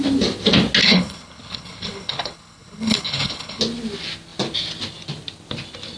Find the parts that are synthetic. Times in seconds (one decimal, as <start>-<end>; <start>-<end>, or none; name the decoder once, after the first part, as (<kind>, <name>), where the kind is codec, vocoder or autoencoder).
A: 0.8-3.6 (codec, HILCodec)